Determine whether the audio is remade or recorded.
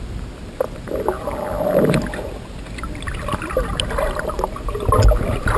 recorded